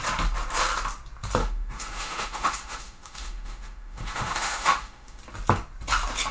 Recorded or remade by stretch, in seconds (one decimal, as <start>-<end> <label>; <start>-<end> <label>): 0.0-1.4 recorded; 1.4-5.2 remade; 5.2-6.3 recorded